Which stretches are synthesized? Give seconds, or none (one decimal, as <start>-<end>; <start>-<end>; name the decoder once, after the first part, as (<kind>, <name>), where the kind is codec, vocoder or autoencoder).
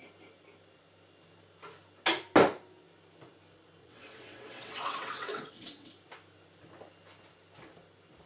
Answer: 3.8-5.9 (vocoder, WaveNeXt)